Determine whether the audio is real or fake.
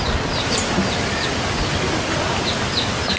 real